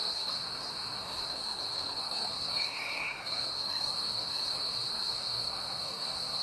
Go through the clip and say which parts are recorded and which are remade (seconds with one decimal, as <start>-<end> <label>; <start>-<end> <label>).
0.0-6.4 remade